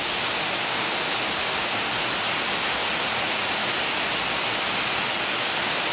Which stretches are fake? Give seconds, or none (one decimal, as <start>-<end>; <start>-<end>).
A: 2.8-3.5